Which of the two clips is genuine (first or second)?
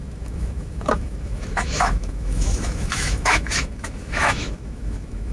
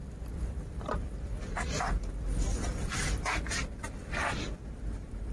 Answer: second